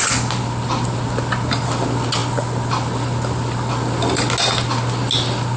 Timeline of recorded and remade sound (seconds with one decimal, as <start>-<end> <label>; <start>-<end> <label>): 0.0-5.6 recorded